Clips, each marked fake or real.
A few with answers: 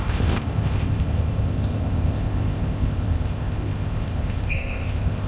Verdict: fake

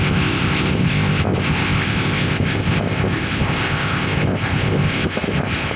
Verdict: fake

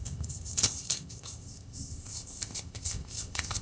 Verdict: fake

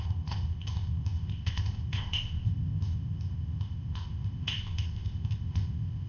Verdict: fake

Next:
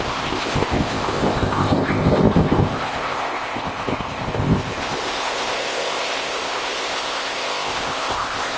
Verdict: fake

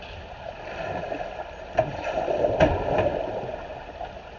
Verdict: real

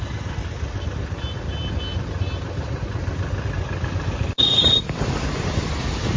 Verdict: real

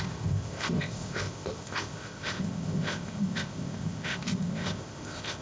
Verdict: fake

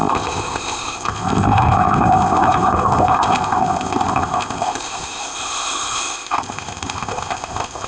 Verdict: fake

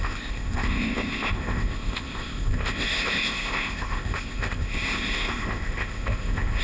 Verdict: fake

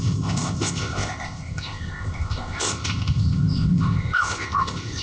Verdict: fake